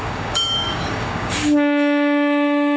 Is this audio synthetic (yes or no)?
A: yes